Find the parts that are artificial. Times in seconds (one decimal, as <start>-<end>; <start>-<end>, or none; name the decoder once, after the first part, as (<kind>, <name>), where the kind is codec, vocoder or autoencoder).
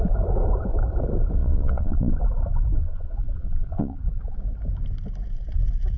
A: 1.4-2.1 (vocoder, Vocos); 2.8-4.0